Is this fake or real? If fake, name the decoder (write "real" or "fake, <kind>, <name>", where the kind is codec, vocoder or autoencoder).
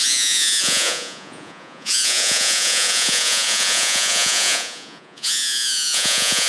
fake, vocoder, Vocos